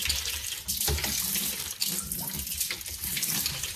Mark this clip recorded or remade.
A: remade